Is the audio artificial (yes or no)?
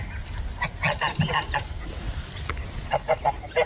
no